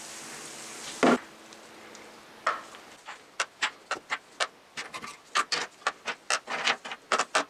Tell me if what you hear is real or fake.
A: real